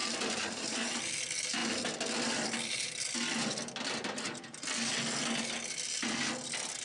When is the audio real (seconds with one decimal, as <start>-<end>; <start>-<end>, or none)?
1.0-6.8